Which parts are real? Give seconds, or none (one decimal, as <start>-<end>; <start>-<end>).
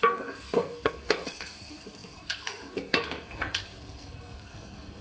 none